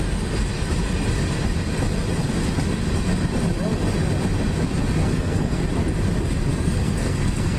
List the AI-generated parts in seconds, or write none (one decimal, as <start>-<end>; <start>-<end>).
5.0-5.6; 6.5-7.6